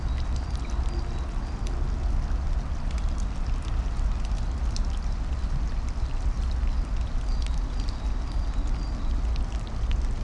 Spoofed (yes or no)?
no